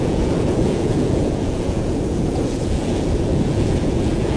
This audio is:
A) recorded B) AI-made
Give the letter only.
B